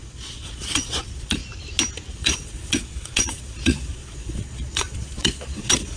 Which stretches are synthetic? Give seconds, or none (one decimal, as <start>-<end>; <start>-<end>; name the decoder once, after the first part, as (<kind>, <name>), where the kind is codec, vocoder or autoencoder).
0.0-1.4 (vocoder, Vocos); 2.1-6.0